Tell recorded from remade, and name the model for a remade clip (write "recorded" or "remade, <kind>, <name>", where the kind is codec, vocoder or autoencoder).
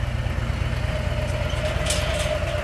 recorded